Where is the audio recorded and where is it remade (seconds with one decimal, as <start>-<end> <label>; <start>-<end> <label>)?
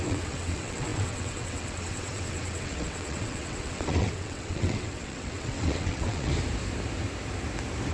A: 0.0-6.3 remade; 6.3-7.9 recorded